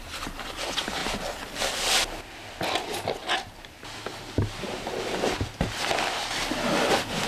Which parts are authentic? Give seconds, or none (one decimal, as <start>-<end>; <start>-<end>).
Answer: 0.0-7.3